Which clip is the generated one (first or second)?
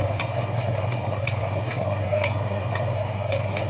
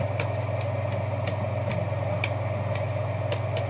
first